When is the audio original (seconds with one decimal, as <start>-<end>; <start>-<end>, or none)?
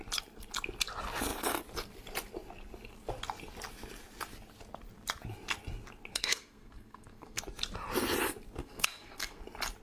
0.0-6.1; 7.4-8.6; 9.4-9.8